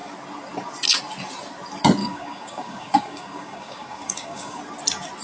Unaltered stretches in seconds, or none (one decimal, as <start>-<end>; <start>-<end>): 0.0-2.0; 4.6-5.2